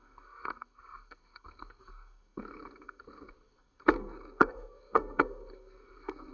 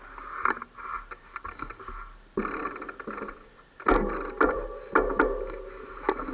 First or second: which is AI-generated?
first